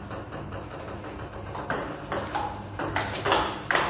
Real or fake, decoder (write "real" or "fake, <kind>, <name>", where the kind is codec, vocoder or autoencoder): real